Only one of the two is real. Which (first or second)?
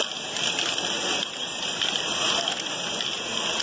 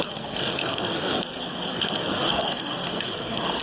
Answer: first